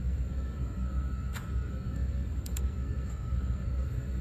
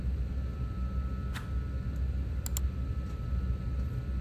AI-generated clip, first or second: first